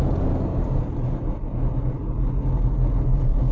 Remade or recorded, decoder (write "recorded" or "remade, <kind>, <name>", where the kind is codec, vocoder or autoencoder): recorded